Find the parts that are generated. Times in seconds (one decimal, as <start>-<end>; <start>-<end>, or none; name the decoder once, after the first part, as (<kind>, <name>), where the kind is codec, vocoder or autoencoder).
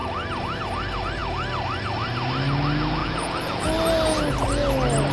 3.0-3.6 (vocoder, Vocos)